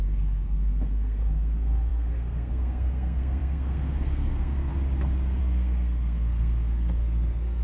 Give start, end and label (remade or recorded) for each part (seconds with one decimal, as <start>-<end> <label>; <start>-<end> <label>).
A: 0.0-4.7 remade; 4.7-5.4 recorded; 5.4-7.6 remade